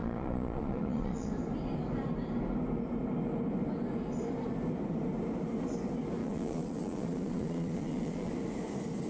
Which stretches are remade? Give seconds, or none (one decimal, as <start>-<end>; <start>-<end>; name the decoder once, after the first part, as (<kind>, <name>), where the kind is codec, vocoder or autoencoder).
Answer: 0.0-1.3 (vocoder, Vocos); 6.2-8.3